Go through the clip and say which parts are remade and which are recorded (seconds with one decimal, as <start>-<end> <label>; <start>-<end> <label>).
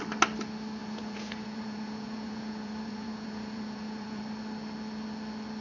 0.0-0.8 recorded; 0.8-4.2 remade; 4.2-5.6 recorded